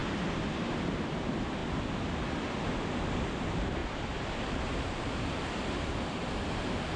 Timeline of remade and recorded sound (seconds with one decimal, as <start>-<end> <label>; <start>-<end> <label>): 0.0-3.8 recorded; 3.8-5.4 remade; 5.4-7.0 recorded